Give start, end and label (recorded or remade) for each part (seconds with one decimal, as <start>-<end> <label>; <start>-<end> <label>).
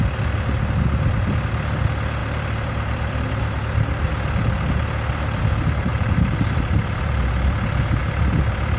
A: 0.0-2.2 recorded; 2.2-4.1 remade; 4.1-5.9 recorded; 5.9-6.6 remade; 6.6-8.8 recorded